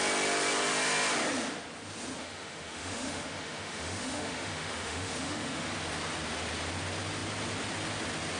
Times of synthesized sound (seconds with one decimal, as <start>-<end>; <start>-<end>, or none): 2.2-5.7